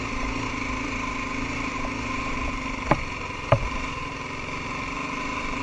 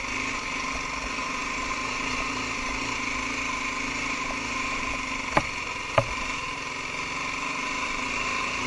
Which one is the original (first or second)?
second